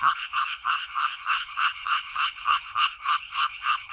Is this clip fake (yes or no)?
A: yes